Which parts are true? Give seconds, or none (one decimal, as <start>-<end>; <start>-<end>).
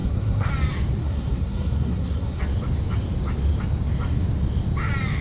0.5-1.0; 2.4-5.2